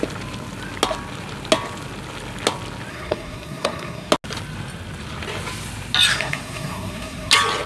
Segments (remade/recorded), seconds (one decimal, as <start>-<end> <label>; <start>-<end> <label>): 0.0-2.9 recorded; 2.9-4.1 remade; 4.1-6.1 recorded; 6.1-7.3 remade; 7.3-7.7 recorded